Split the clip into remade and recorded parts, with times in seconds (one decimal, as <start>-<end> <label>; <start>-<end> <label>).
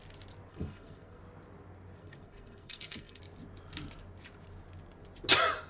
0.0-0.5 recorded; 0.5-1.2 remade; 1.2-2.0 recorded; 2.0-3.2 remade; 3.2-5.7 recorded